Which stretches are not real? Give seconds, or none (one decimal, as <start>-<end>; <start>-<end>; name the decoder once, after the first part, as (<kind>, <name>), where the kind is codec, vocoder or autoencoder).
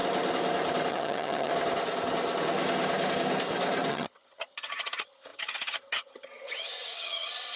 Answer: 0.9-1.5 (vocoder, HiFi-GAN); 3.9-7.6